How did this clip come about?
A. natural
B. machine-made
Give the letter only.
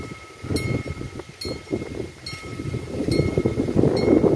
A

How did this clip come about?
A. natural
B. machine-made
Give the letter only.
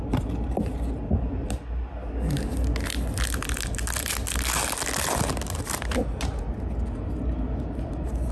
A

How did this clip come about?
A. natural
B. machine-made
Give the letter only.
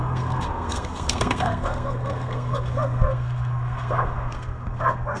B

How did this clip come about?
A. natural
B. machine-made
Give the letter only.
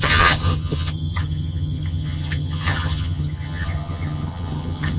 B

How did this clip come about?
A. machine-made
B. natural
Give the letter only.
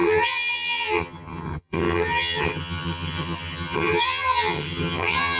A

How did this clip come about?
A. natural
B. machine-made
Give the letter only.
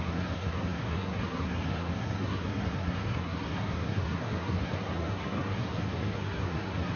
B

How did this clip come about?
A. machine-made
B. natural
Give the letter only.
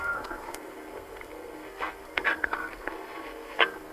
A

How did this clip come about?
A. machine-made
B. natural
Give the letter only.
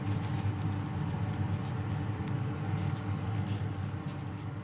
B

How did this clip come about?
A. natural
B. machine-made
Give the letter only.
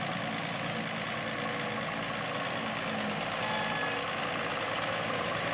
A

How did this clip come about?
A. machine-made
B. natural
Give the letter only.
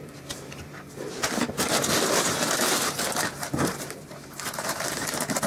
A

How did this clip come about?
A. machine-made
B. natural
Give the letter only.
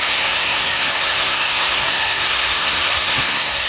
A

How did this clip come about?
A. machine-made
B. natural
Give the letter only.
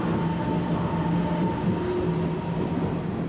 B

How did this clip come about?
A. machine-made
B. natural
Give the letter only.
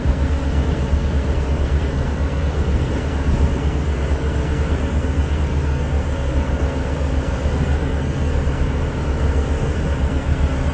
A